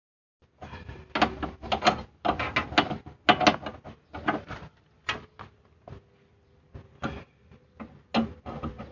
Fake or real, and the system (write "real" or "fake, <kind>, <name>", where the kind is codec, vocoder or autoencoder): real